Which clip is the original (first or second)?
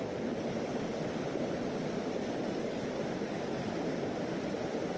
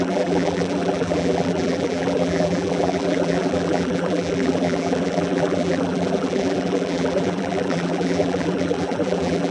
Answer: first